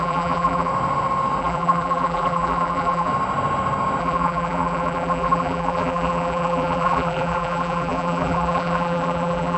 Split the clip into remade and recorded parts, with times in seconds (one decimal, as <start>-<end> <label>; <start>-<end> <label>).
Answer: 0.0-0.7 remade; 0.7-1.4 recorded; 1.4-3.1 remade; 3.1-4.0 recorded; 4.0-9.6 remade